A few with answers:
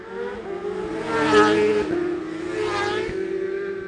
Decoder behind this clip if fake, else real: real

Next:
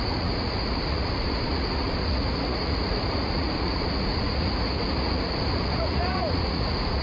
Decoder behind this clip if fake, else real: fake, vocoder, Vocos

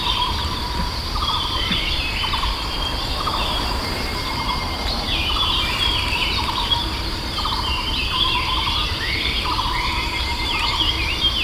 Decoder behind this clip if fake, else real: fake, vocoder, BigVGAN v2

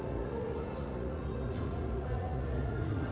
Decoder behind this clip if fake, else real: fake, vocoder, Vocos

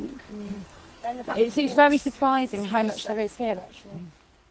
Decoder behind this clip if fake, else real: fake, codec, SNAC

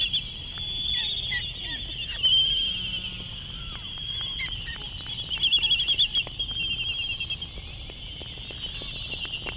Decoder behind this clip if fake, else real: real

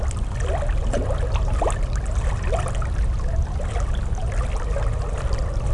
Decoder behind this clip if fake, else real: real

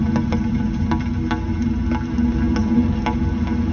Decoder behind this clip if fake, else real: real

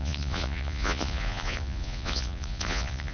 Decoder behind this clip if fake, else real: fake, vocoder, Vocos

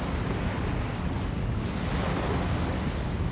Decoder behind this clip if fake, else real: real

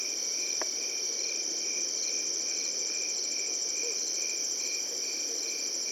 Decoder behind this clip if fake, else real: real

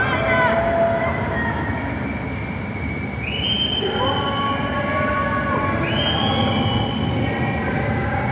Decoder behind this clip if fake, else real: real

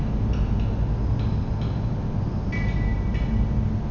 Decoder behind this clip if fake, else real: real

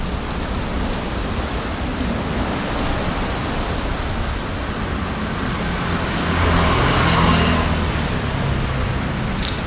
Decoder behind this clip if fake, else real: real